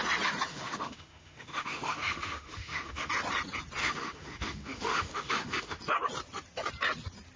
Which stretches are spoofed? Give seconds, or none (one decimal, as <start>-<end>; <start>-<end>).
0.5-3.1; 3.8-5.8